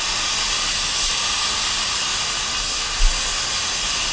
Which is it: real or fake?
real